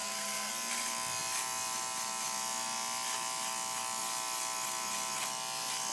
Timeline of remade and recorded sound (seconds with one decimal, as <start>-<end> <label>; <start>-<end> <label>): 0.0-0.5 remade; 0.5-5.9 recorded